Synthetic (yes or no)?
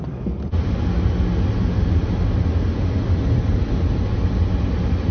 no